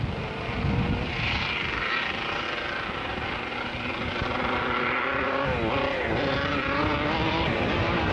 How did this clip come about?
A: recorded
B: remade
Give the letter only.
A